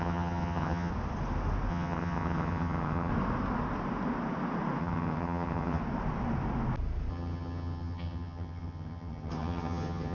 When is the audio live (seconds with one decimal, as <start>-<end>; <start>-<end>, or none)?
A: 0.9-1.7; 3.1-4.8; 5.8-7.1